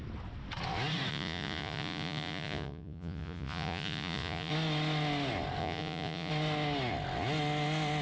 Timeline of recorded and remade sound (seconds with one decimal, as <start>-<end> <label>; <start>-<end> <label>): 0.0-1.1 recorded; 1.1-4.5 remade; 4.5-5.6 recorded; 5.6-6.3 remade; 6.3-8.0 recorded